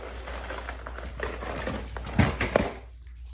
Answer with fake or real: real